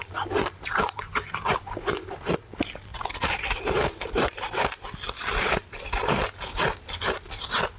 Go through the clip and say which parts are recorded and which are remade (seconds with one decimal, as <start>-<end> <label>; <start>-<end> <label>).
0.0-2.9 recorded; 2.9-4.5 remade; 4.5-7.8 recorded